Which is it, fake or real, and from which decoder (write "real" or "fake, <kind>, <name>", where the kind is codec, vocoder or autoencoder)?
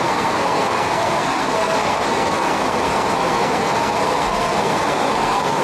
fake, codec, SNAC